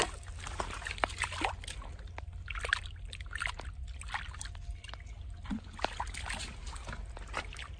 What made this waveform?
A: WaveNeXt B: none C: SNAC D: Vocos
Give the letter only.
B